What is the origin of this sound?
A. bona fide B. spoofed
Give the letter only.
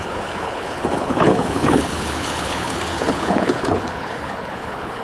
B